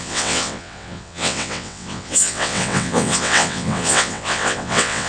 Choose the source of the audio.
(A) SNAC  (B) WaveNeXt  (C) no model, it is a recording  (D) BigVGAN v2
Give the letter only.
B